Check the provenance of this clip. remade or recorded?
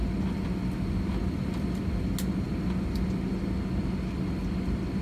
recorded